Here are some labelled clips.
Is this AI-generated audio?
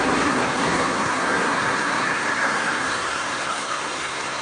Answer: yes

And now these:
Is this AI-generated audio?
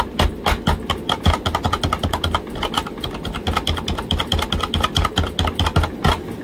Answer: no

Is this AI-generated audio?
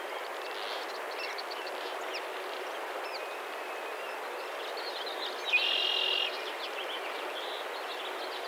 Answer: no